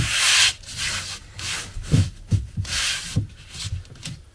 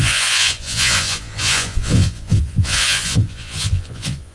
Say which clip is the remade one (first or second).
second